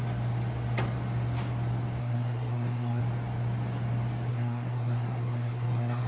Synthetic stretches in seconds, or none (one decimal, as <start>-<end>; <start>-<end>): 2.0-3.0; 4.3-6.1